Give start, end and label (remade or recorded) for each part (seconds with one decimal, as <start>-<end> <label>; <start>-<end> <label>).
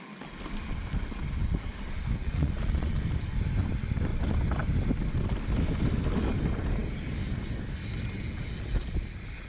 0.0-2.2 recorded; 2.2-3.0 remade; 3.0-9.5 recorded